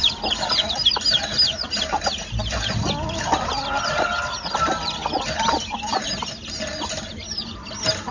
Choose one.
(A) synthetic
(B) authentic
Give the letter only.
B